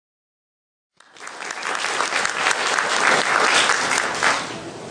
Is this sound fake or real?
real